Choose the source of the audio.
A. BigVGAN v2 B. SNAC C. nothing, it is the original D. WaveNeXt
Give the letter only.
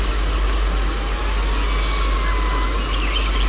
C